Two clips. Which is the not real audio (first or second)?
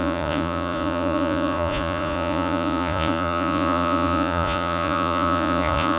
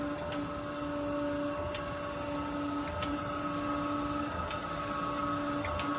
first